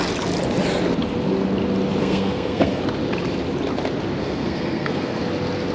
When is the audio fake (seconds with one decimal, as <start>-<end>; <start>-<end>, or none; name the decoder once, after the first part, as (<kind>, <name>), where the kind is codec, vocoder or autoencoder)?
2.0-2.8 (codec, SNAC); 4.2-5.2